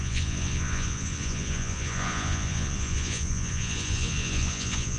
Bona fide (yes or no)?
no